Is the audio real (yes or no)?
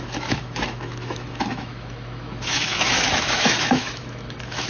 no